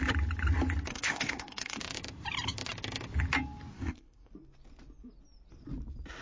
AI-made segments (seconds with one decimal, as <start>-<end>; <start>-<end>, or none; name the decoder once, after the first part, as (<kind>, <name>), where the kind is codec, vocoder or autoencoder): 0.9-1.8 (codec, SNAC); 3.7-4.3